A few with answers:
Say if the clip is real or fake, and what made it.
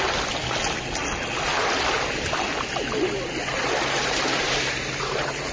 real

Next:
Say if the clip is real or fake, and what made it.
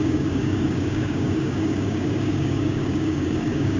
fake, codec, DAC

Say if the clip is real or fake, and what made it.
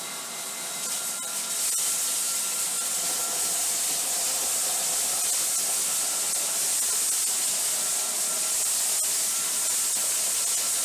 real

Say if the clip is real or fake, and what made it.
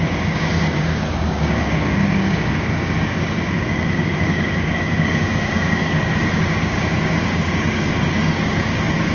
fake, codec, DAC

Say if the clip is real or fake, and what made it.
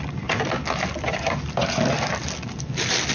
real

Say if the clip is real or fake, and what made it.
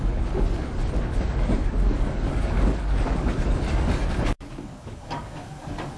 fake, codec, DAC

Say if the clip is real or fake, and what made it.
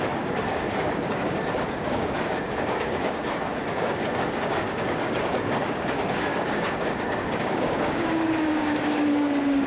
fake, codec, DAC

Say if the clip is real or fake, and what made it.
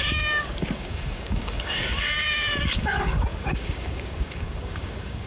fake, codec, DAC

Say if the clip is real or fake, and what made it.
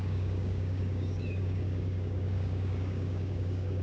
fake, codec, DAC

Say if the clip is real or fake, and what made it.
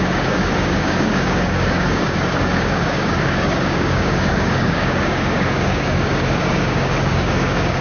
fake, codec, DAC